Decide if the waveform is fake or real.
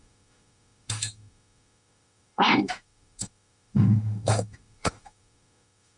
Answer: fake